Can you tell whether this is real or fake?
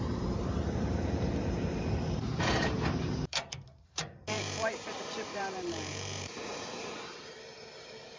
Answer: fake